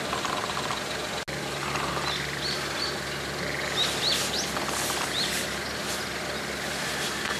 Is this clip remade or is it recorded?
recorded